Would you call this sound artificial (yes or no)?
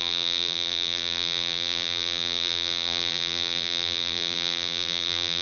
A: yes